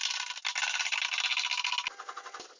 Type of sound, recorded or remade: recorded